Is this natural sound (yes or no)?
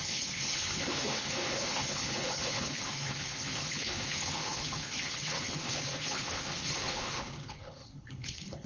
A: no